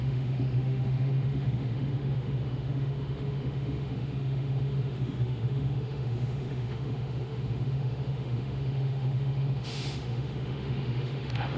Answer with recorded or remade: remade